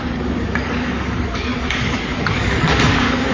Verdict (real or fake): fake